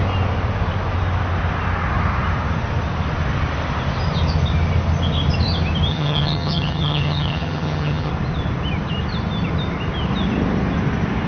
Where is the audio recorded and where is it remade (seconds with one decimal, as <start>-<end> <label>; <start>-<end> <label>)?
0.0-5.9 recorded; 5.9-8.1 remade; 8.1-11.3 recorded